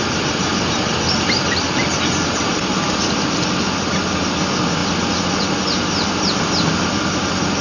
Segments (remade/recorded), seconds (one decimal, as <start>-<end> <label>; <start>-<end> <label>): 0.0-7.6 recorded